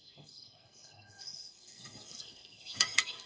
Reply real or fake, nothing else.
fake